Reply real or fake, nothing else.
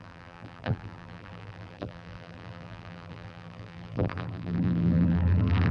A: fake